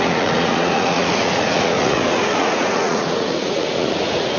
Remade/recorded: remade